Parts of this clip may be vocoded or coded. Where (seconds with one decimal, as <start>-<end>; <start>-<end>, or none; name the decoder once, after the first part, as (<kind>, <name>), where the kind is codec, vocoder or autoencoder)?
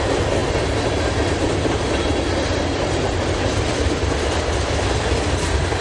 none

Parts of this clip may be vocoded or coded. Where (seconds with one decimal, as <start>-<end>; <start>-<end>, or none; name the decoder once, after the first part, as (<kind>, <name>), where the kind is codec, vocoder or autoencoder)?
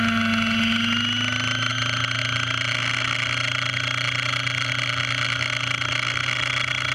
none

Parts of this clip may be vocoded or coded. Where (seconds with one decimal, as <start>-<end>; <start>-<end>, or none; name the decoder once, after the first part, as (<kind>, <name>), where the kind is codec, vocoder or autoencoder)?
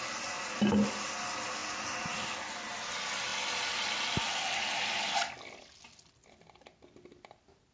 none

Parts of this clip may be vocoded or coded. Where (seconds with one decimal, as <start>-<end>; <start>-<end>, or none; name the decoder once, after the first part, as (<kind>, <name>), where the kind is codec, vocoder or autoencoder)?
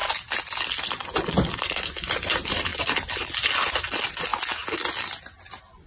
0.8-4.3 (vocoder, BigVGAN v2); 5.5-5.9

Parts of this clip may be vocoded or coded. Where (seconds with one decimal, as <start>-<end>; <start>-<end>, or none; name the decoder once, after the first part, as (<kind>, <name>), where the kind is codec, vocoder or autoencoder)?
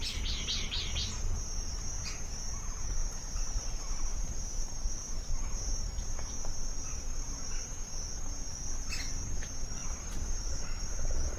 3.0-5.4 (vocoder, BigVGAN v2); 9.8-10.6